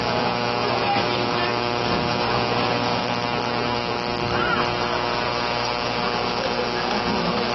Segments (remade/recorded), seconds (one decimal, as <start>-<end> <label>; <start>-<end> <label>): 0.0-3.0 recorded; 3.0-4.5 remade; 4.5-7.5 recorded